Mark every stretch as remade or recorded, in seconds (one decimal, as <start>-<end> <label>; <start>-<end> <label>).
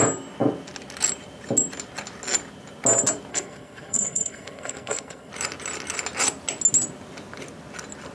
0.0-3.3 recorded; 3.3-5.3 remade; 5.3-8.1 recorded